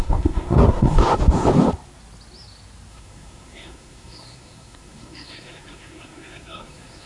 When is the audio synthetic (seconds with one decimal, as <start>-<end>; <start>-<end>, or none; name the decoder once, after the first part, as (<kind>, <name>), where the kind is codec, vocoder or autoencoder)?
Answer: 0.0-1.0 (codec, SNAC); 2.9-7.1